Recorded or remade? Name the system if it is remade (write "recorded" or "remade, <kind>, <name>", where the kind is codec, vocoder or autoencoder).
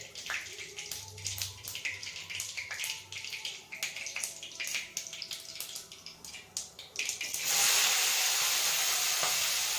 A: recorded